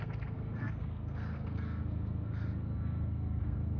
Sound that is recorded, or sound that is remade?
remade